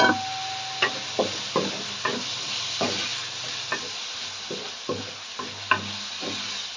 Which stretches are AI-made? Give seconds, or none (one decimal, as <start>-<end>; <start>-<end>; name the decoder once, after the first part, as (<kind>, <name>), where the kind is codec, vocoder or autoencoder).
none